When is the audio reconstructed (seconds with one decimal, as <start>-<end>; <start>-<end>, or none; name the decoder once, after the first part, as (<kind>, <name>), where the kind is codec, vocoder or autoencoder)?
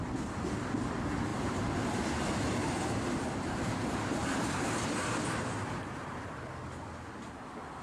1.3-2.0 (vocoder, BigVGAN v2); 2.6-6.4